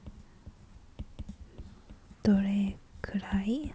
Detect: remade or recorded recorded